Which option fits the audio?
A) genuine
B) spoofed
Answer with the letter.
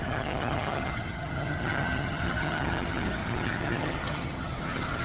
B